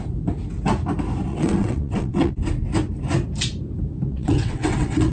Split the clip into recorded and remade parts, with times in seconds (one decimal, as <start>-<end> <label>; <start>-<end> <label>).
0.0-1.3 recorded; 1.3-2.3 remade; 2.3-4.1 recorded; 4.1-5.1 remade